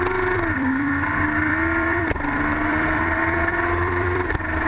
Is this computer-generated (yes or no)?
yes